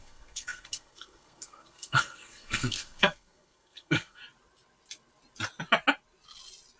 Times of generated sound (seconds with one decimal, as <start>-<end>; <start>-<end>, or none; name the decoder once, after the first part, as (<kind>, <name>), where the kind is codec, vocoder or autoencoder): 0.0-4.2 (codec, SNAC)